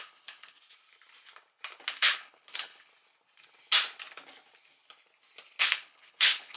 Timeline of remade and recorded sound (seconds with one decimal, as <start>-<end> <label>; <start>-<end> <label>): 0.0-0.6 remade; 0.6-1.9 recorded; 1.9-2.9 remade; 2.9-5.6 recorded; 5.6-6.6 remade